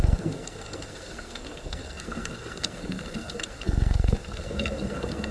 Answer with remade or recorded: remade